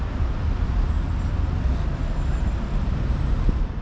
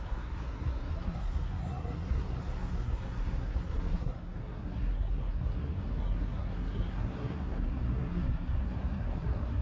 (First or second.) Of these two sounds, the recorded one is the first